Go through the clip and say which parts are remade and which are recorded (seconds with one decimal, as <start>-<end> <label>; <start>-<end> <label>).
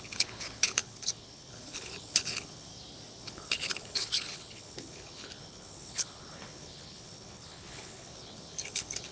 0.0-2.7 remade; 2.7-3.2 recorded; 3.2-9.1 remade